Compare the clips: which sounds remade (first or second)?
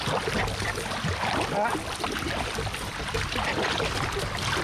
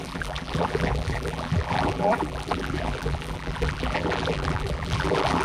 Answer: second